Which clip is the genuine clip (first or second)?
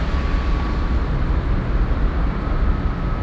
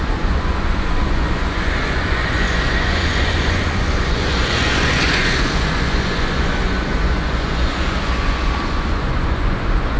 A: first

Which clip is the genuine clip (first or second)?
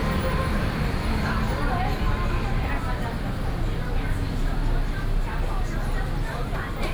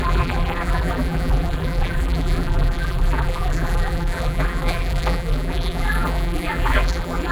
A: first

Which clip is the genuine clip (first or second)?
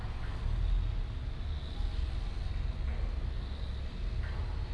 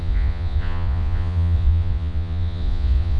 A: first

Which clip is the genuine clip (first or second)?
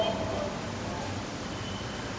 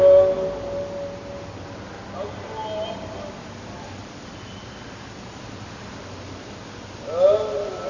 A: second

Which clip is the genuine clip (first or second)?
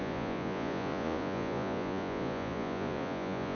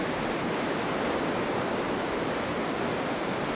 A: second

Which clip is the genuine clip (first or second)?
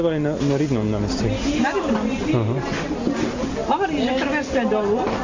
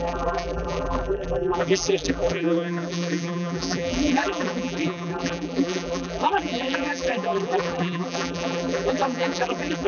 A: first